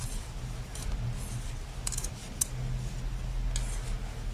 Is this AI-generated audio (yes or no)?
no